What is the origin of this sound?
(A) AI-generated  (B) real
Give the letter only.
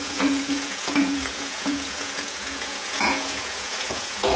A